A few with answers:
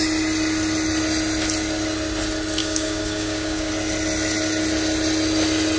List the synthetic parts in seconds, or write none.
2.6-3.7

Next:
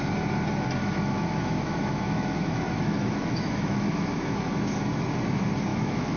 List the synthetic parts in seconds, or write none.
0.8-4.5; 5.7-6.2

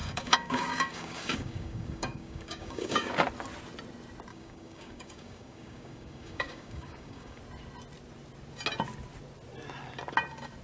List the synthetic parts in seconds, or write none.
0.0-3.1; 4.3-7.4

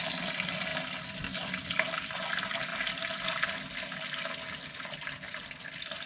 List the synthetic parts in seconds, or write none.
none

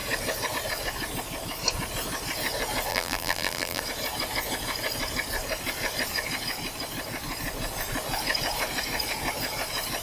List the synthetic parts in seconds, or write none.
2.9-3.8

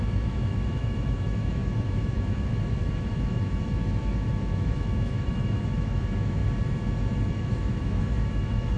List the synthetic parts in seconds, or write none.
0.0-6.4; 7.3-8.8